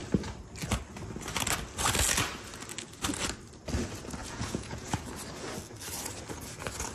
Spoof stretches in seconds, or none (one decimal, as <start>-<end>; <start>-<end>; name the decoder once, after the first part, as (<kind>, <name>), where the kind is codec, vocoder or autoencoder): 4.2-5.1 (vocoder, Vocos)